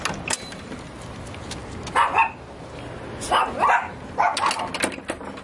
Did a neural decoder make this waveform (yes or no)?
no